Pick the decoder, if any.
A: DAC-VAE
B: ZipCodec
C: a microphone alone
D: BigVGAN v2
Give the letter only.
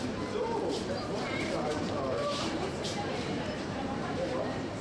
D